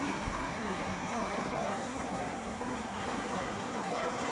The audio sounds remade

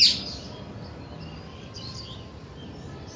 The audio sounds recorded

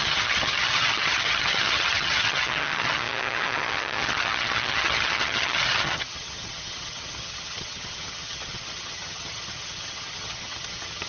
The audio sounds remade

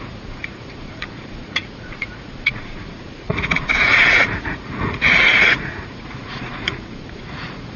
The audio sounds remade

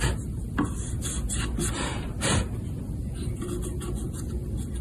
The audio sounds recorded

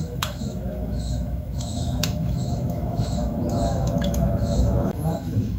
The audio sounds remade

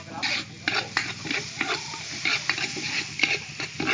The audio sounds recorded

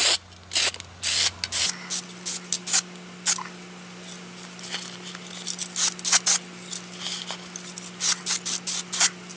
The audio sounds recorded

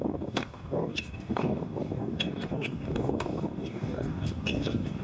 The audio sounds remade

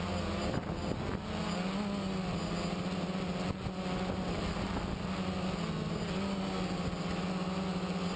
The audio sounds recorded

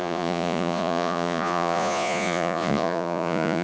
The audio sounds remade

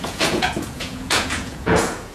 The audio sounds remade